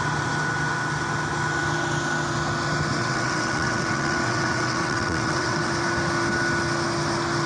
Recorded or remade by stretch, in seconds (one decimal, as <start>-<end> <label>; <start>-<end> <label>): 0.0-3.0 recorded; 3.0-5.7 remade; 5.7-7.5 recorded